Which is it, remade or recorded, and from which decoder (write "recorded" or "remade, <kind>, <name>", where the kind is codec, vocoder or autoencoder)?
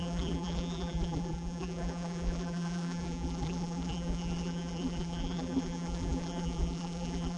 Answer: remade, vocoder, BigVGAN v2